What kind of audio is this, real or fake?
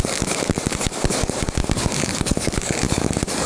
fake